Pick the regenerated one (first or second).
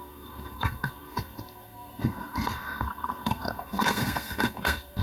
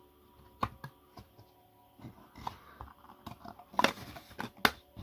first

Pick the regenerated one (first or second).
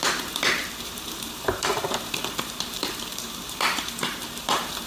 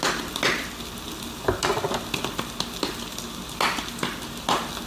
first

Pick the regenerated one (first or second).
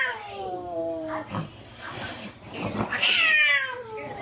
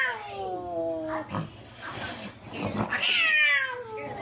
first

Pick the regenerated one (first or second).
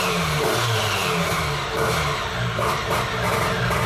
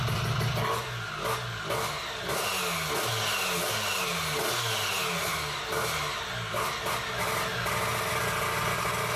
first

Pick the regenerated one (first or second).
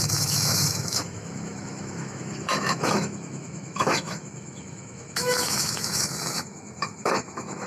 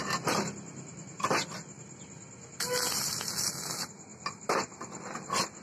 first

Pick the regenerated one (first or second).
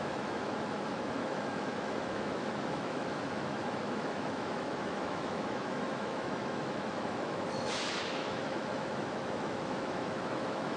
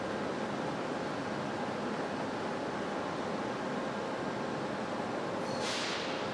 first